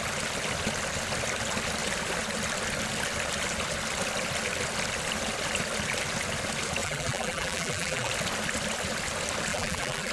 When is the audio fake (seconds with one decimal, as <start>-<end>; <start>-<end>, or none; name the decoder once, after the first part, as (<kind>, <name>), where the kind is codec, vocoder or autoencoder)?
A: 6.8-8.1 (vocoder, BigVGAN v2); 9.5-10.1